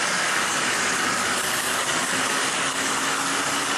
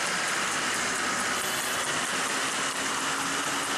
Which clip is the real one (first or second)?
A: second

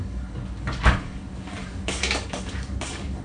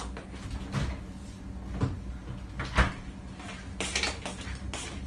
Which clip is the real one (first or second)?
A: second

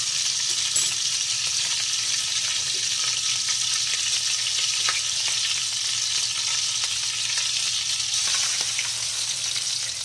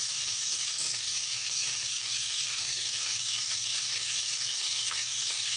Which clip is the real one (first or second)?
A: first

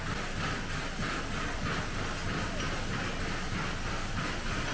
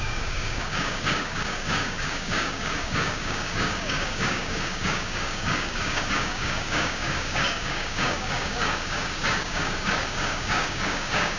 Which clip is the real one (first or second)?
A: first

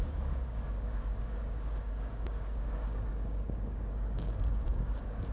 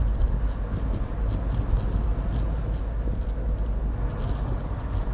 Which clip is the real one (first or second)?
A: second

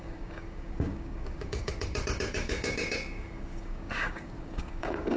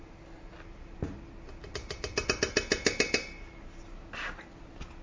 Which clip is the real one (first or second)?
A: second